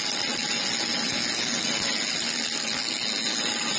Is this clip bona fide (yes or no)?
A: yes